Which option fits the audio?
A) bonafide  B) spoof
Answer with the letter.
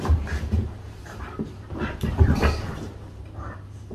B